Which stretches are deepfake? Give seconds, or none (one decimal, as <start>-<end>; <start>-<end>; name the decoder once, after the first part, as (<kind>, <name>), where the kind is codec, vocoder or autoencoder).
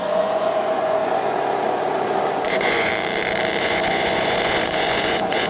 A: 0.0-2.9 (vocoder, Vocos); 3.6-5.5